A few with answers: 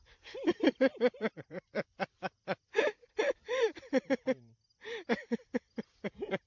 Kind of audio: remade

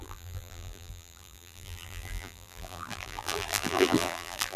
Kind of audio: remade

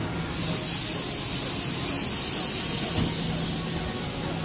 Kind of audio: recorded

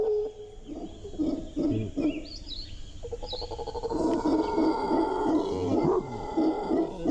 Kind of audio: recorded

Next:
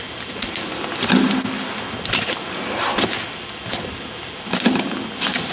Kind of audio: recorded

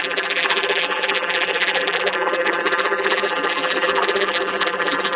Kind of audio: remade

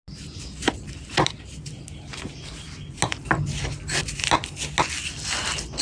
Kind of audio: recorded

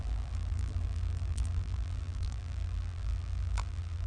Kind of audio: remade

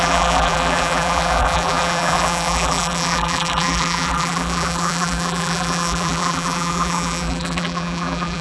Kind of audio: remade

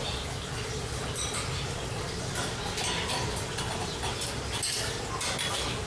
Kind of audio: recorded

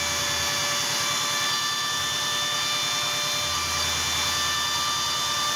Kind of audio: recorded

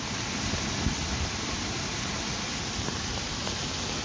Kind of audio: recorded